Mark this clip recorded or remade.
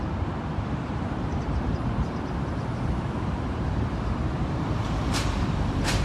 remade